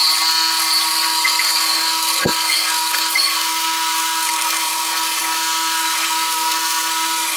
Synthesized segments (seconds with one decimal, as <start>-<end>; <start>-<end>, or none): 0.9-7.4